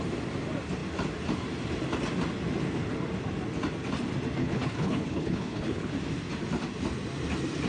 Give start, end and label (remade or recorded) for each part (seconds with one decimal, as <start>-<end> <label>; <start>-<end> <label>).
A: 0.0-4.4 recorded; 4.4-5.9 remade; 5.9-7.7 recorded